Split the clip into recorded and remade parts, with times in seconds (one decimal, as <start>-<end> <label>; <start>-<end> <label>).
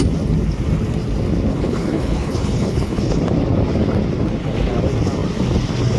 0.0-1.5 recorded; 1.5-3.2 remade; 3.2-6.0 recorded